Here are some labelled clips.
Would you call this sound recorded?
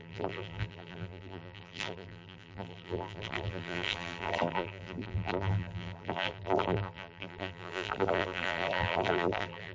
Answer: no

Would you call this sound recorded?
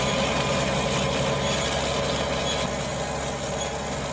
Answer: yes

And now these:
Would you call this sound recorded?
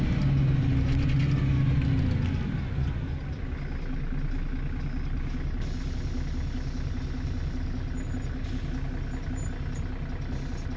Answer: yes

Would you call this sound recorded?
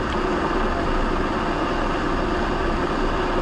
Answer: yes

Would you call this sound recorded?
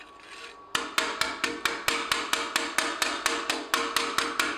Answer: yes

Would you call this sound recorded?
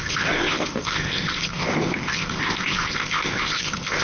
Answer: no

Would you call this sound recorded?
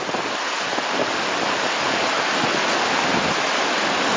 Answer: yes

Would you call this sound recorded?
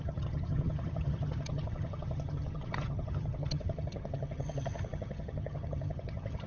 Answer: no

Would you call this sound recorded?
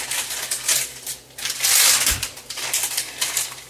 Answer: no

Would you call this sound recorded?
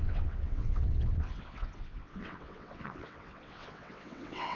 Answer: no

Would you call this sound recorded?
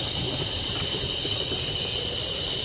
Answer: yes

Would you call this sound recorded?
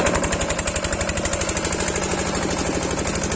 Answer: yes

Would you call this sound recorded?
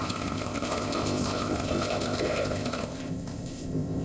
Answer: no